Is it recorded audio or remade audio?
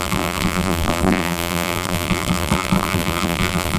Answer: remade